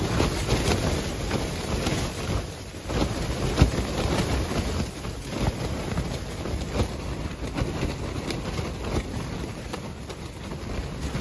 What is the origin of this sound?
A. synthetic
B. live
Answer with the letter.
B